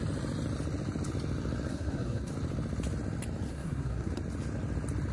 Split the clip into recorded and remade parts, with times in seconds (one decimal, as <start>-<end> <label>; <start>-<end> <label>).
0.0-1.7 recorded; 1.7-2.3 remade; 2.3-3.5 recorded; 3.5-4.1 remade; 4.1-5.1 recorded